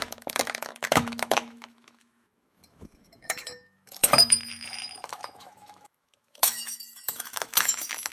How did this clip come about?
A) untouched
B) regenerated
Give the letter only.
B